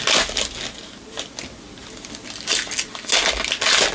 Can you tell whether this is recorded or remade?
recorded